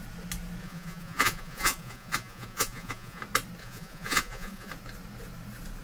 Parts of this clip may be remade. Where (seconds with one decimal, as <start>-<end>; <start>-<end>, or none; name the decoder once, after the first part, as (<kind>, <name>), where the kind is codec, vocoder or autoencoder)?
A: 0.6-3.2 (vocoder, Vocos); 3.6-4.7